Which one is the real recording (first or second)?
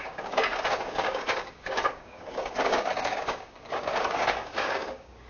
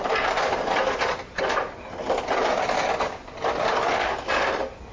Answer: second